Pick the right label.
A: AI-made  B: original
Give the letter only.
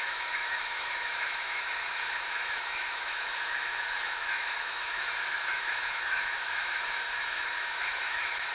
A